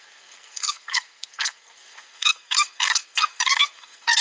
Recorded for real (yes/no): no